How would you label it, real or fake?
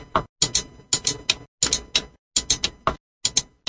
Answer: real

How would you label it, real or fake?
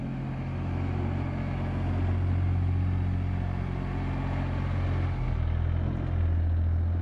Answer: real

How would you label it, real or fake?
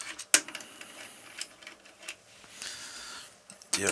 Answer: real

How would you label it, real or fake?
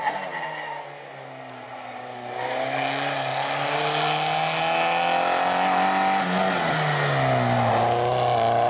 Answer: real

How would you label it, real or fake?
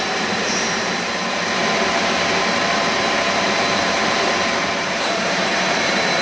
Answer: fake